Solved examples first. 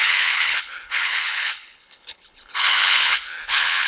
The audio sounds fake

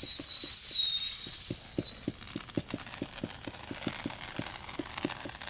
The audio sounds real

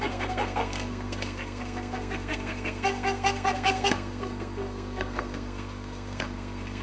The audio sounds fake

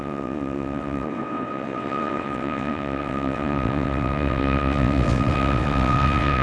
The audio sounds fake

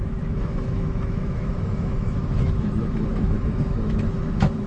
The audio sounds fake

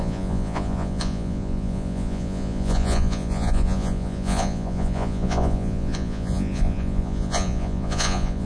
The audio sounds fake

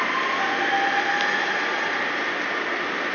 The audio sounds real